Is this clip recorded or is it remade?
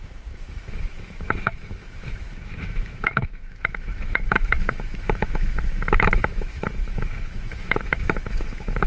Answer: remade